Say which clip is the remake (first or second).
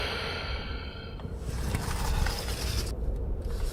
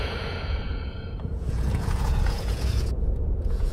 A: second